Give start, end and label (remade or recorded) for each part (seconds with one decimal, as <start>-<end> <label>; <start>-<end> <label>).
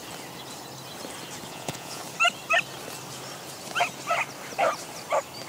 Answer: 0.0-1.5 recorded; 1.5-2.0 remade; 2.0-5.5 recorded